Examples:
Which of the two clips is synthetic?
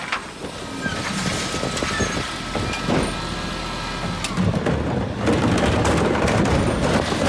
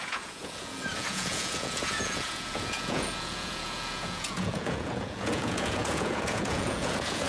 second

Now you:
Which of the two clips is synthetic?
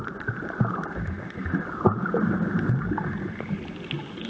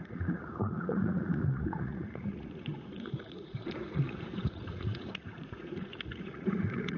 second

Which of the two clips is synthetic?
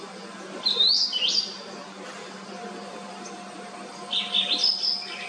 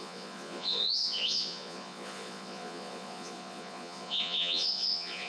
second